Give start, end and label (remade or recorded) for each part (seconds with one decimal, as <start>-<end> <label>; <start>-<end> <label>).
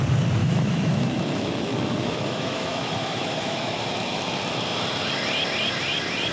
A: 0.0-0.4 recorded; 0.4-4.2 remade; 4.2-6.3 recorded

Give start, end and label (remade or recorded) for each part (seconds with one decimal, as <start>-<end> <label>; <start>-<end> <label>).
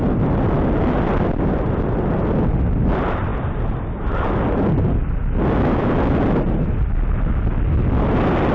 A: 0.0-8.5 recorded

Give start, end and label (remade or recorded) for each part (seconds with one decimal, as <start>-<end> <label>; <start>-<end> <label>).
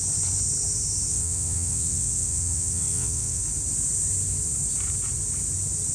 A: 0.0-1.1 recorded; 1.1-3.4 remade; 3.4-5.9 recorded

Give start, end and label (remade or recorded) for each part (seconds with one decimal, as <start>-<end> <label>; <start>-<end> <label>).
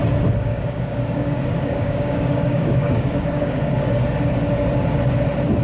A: 0.0-0.5 recorded; 0.5-3.9 remade; 3.9-5.6 recorded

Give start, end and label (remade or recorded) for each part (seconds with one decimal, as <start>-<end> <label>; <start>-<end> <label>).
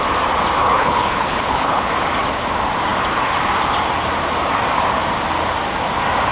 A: 0.0-0.6 recorded; 0.6-1.9 remade; 1.9-6.3 recorded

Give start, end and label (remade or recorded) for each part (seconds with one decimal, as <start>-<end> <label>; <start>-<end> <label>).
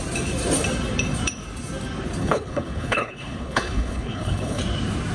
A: 0.0-2.2 recorded; 2.2-4.6 remade; 4.6-5.1 recorded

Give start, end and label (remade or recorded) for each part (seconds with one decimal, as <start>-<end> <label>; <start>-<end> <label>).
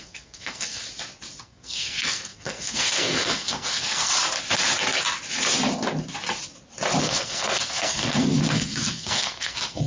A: 0.0-0.8 remade; 0.8-1.4 recorded; 1.4-4.1 remade; 4.1-7.0 recorded; 7.0-9.9 remade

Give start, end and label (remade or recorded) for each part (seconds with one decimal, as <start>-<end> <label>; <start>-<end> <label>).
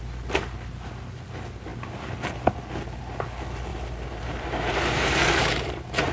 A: 0.0-3.7 recorded; 3.7-6.1 remade